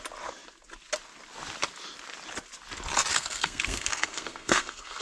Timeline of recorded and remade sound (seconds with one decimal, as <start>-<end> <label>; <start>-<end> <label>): 0.0-3.1 recorded; 3.1-5.0 remade

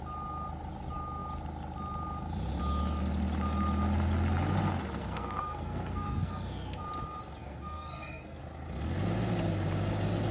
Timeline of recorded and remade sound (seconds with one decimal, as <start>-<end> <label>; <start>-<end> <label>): 0.0-5.0 recorded; 5.0-6.8 remade; 6.8-7.4 recorded; 7.4-8.4 remade; 8.4-10.3 recorded

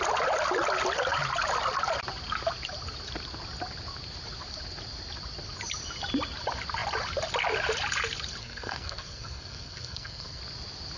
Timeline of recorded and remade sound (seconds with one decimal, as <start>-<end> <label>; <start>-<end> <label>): 0.0-8.4 recorded; 8.4-10.4 remade; 10.4-11.0 recorded

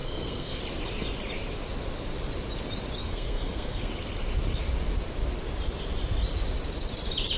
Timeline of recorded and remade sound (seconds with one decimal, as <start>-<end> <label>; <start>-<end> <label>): 0.0-0.6 remade; 0.6-3.0 recorded; 3.0-3.9 remade; 3.9-7.4 recorded

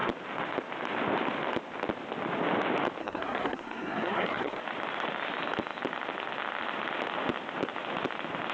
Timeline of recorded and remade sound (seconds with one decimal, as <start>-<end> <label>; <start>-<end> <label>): 0.0-3.0 recorded; 3.0-4.6 remade; 4.6-8.5 recorded

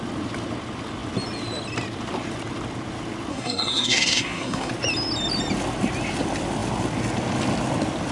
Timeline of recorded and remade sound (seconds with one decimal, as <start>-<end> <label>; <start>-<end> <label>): 0.0-3.3 recorded; 3.3-4.7 remade; 4.7-8.1 recorded

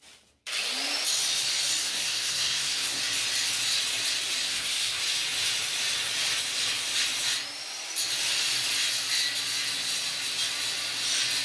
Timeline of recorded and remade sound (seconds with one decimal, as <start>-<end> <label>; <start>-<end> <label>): 0.0-1.8 recorded; 1.8-3.0 remade; 3.0-4.4 recorded; 4.4-5.0 remade; 5.0-11.4 recorded

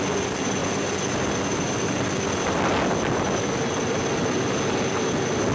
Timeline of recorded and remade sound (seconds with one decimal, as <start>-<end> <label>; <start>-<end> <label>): 0.0-5.5 recorded